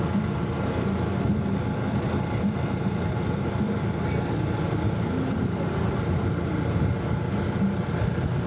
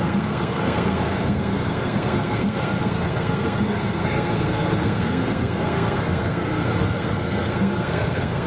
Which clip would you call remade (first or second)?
second